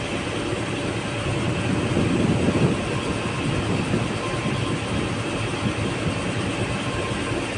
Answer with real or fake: real